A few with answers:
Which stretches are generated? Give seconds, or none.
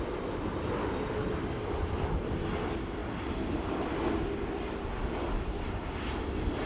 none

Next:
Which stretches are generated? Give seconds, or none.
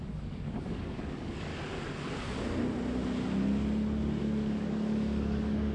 0.0-1.5 (codec, DAC); 4.2-5.7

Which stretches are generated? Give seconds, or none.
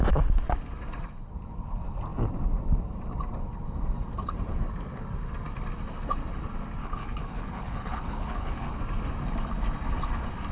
6.8-8.8 (codec, HILCodec)